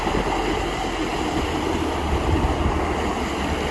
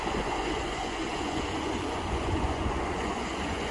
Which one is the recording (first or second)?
first